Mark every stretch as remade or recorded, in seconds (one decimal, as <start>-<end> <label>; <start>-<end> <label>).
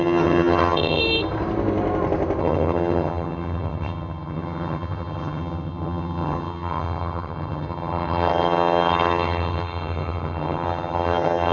0.0-1.0 remade; 1.0-2.4 recorded; 2.4-11.5 remade